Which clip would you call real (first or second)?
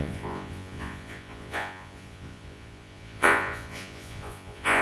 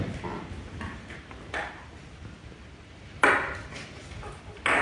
second